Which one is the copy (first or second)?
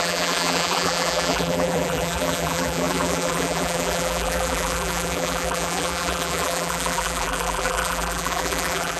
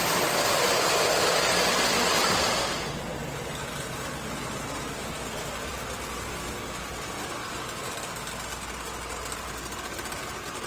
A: first